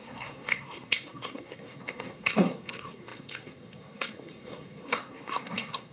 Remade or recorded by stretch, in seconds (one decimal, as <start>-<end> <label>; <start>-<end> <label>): 0.0-5.9 remade